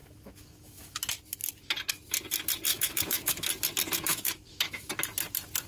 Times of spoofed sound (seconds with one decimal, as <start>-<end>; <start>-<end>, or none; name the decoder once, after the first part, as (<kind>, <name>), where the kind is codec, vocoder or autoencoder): 0.0-1.0 (autoencoder, DAC-VAE); 2.7-3.5; 4.1-4.9